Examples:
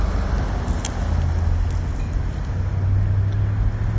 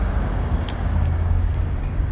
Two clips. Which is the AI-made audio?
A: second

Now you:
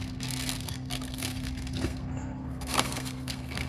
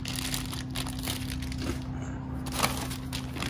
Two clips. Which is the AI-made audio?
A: first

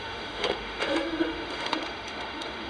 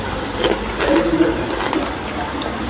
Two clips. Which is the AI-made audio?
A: first